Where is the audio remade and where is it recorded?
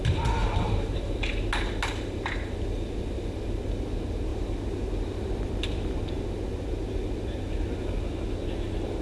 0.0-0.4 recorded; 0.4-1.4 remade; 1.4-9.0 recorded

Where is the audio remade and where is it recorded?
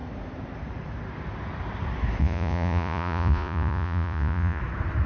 0.0-2.2 recorded; 2.2-4.6 remade; 4.6-5.1 recorded